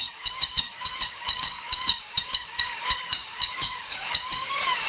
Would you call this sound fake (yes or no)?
yes